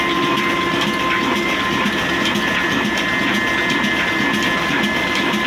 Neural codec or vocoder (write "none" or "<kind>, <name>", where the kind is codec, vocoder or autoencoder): none